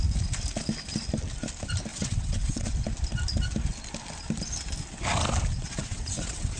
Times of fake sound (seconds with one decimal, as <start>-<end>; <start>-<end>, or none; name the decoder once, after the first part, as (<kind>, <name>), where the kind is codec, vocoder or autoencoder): 1.9-2.7 (vocoder, WaveNeXt); 5.5-6.6